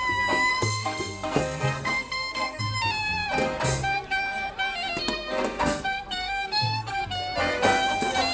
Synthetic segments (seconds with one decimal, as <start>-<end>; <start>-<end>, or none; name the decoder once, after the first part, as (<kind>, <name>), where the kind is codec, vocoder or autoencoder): 0.5-2.6 (codec, SNAC); 5.0-7.0